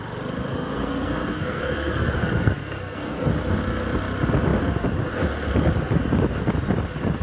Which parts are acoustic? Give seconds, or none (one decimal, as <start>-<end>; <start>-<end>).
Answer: 0.0-0.5; 3.3-7.2